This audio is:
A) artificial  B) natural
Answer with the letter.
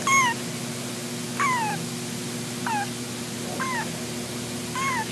B